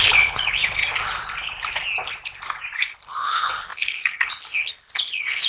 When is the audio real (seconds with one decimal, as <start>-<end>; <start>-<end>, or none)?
0.8-2.9